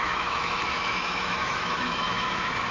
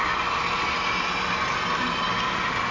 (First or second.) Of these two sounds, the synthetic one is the first